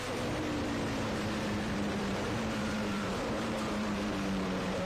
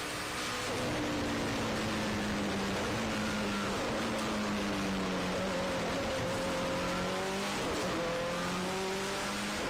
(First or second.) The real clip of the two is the second